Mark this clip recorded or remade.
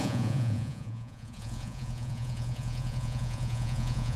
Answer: remade